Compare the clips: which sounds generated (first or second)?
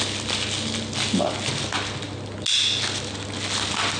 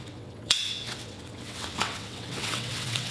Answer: second